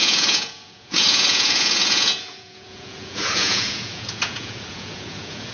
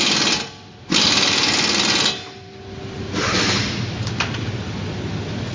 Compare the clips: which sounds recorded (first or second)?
second